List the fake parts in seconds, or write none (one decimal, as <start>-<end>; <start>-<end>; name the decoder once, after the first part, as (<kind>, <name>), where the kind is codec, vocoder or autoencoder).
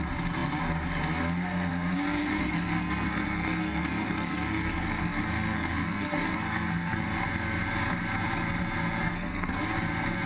2.2-7.0 (codec, SNAC); 9.0-9.6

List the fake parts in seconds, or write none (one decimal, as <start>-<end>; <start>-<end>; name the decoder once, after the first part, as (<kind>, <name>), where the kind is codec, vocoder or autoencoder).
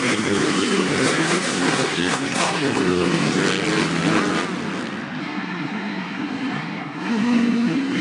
0.0-3.4 (codec, SNAC); 5.2-8.0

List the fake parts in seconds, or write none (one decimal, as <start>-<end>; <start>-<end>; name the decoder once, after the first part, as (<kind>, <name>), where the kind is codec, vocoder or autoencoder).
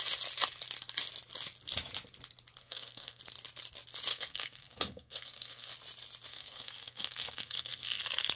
2.6-3.2 (codec, SNAC); 4.1-5.7; 6.3-8.0